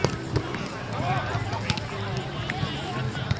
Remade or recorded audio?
remade